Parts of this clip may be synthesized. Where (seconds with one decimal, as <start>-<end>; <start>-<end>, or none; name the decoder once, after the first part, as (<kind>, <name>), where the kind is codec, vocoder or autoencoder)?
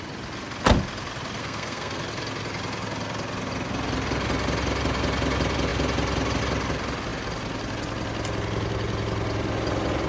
1.4-2.0 (codec, SNAC)